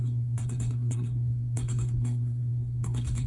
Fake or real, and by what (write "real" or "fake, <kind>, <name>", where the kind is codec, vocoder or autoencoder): fake, codec, SNAC